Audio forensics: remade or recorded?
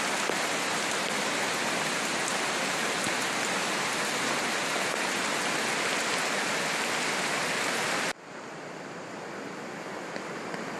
recorded